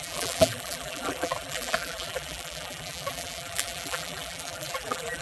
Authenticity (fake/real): fake